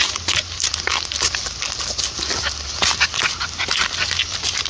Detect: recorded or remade recorded